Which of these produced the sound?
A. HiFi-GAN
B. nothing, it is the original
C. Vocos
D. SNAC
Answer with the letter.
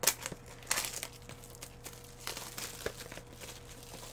B